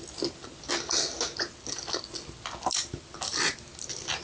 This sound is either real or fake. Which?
real